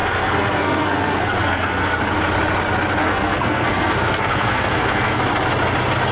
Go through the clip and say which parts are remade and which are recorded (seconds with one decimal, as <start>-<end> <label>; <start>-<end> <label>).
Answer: 0.0-2.0 remade; 2.0-3.0 recorded; 3.0-5.2 remade; 5.2-6.1 recorded